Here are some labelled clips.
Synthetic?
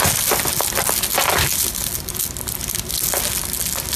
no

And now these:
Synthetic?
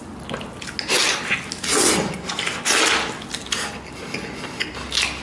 no